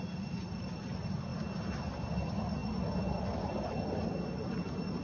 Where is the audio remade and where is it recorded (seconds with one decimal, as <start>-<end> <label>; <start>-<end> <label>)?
0.0-5.0 recorded